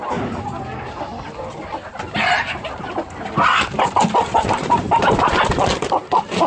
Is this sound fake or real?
real